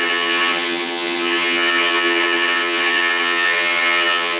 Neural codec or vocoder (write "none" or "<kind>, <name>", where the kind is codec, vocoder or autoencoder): vocoder, HiFi-GAN